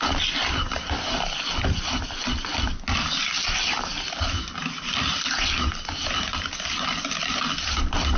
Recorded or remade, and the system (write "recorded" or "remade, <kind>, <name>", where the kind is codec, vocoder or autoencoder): recorded